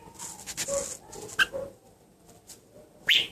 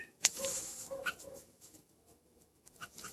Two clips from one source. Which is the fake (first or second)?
second